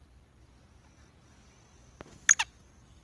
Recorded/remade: recorded